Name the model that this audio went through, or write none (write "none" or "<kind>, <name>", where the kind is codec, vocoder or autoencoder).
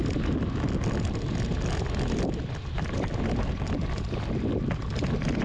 none